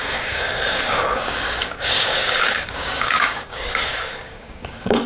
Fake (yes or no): yes